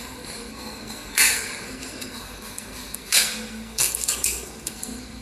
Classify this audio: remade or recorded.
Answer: remade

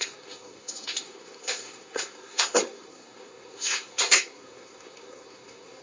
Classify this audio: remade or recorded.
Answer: remade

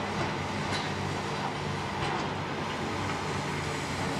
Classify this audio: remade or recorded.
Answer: recorded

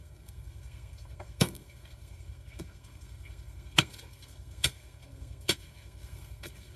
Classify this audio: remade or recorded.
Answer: remade